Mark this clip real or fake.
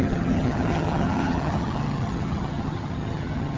fake